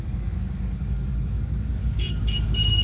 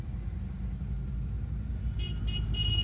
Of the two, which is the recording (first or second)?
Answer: second